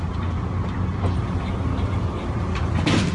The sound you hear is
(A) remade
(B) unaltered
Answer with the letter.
B